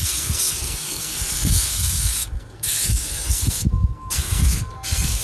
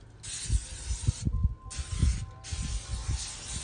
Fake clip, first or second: first